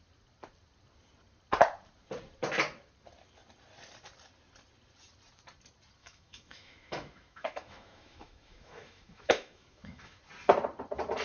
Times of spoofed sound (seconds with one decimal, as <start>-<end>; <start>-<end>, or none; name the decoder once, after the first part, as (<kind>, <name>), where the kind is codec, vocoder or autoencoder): 6.0-10.2 (autoencoder, DAC-VAE)